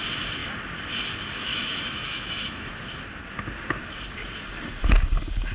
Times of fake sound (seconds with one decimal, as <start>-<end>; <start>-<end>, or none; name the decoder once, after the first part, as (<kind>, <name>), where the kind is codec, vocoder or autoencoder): 1.5-2.7 (autoencoder, DAC-VAE)